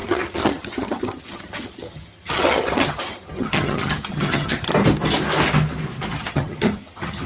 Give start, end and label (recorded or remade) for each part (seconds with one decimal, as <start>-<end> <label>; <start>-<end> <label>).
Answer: 0.0-4.7 remade; 4.7-6.1 recorded; 6.1-7.3 remade